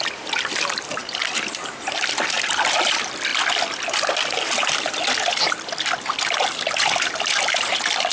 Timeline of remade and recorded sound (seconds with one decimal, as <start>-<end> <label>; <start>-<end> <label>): 0.0-1.0 remade; 1.0-1.7 recorded; 1.7-8.1 remade